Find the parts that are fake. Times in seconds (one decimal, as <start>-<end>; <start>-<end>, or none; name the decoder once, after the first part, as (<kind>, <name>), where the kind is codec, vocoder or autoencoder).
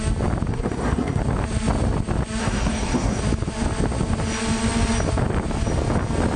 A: 0.5-1.2 (codec, SNAC); 2.4-3.2